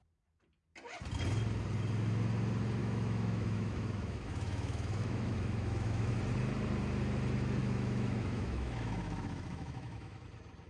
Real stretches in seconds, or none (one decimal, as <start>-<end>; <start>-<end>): 0.0-2.8; 6.2-7.6; 10.2-10.7